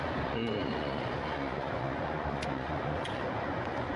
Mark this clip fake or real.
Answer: fake